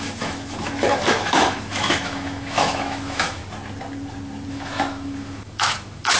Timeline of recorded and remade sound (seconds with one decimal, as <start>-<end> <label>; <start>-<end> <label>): 0.0-3.4 remade; 3.4-4.5 recorded; 4.5-6.2 remade